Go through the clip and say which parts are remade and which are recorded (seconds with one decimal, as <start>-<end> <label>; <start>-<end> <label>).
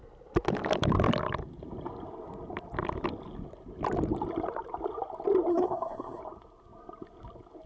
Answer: 0.0-5.5 recorded; 5.5-6.2 remade; 6.2-7.7 recorded